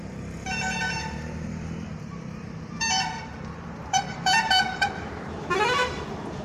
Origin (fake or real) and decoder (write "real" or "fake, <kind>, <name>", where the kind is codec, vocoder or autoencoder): fake, vocoder, BigVGAN v2